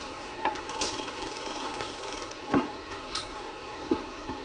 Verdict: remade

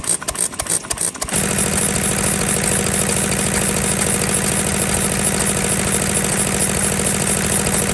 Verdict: recorded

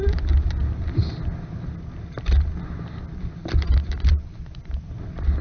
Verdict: recorded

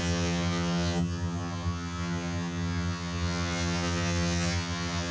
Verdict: remade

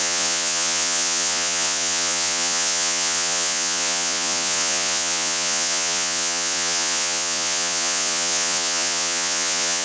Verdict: remade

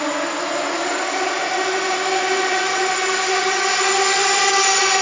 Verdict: recorded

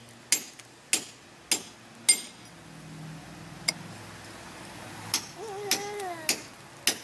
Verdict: recorded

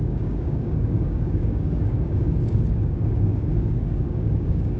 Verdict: remade